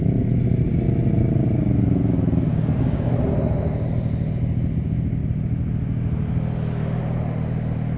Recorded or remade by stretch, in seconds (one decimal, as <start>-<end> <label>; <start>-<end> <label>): 0.0-2.5 recorded; 2.5-3.1 remade; 3.1-8.0 recorded